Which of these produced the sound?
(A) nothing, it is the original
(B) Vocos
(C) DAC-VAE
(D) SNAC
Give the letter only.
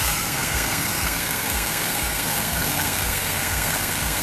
D